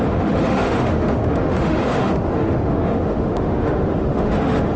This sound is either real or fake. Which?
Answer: fake